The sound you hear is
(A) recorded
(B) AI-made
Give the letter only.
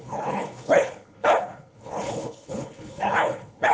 B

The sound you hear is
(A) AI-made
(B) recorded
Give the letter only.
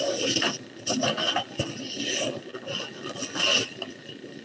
B